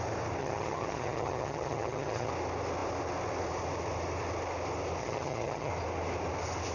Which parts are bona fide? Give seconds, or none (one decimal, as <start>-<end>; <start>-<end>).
0.0-0.4; 2.3-5.0; 5.7-6.7